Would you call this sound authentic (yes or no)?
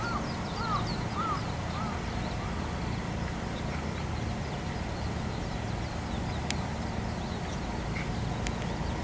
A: yes